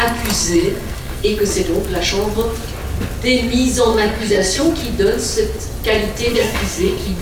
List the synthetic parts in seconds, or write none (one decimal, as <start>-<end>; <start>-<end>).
0.4-1.4; 3.9-4.7; 6.3-7.2